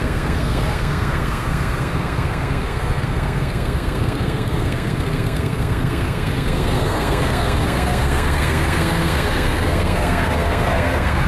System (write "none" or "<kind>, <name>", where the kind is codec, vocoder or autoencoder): codec, SNAC